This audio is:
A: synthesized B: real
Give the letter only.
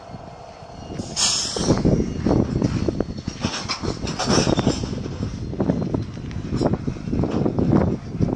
B